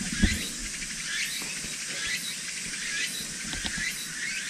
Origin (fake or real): real